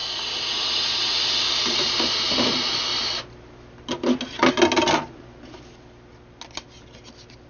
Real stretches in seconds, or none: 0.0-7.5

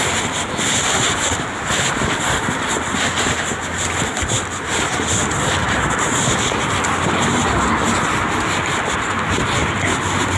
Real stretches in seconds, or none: 0.0-5.6; 7.6-10.4